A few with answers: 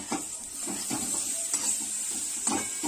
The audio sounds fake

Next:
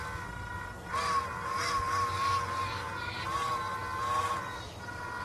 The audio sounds real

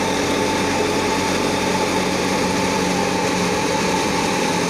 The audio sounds real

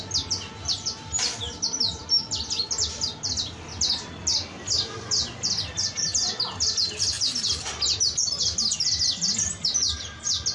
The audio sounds real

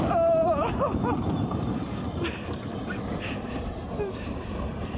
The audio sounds fake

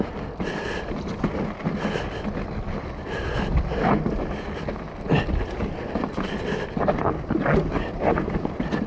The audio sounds real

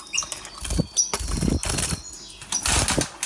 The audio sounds real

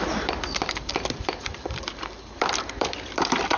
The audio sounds fake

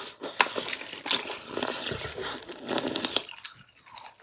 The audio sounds real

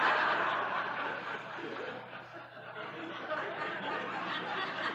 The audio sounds real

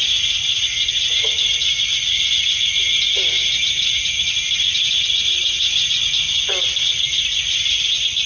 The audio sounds real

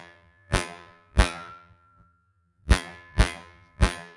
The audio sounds fake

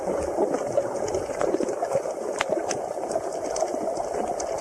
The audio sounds real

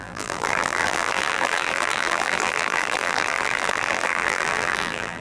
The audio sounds fake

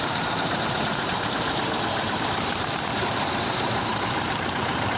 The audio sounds fake